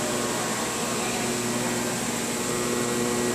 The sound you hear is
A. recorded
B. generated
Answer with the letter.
A